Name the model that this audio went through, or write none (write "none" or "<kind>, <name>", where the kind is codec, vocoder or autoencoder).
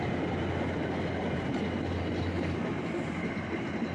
none